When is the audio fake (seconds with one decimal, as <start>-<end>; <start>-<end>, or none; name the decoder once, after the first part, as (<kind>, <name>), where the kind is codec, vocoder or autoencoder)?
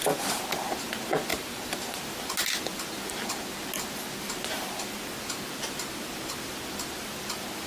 1.3-2.0 (vocoder, BigVGAN v2)